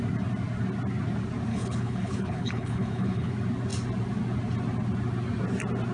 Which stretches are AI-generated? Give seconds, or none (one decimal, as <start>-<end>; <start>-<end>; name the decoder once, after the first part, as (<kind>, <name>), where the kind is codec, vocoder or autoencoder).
1.5-3.3 (codec, HILCodec)